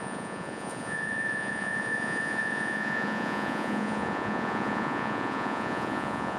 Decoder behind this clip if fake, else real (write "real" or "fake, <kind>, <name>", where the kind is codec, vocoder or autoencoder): fake, vocoder, Vocos